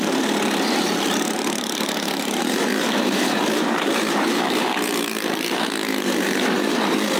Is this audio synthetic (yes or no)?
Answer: yes